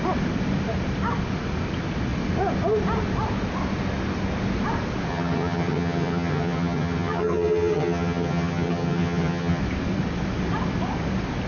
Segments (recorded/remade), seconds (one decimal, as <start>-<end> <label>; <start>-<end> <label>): 0.0-5.1 recorded; 5.1-9.6 remade; 9.6-11.5 recorded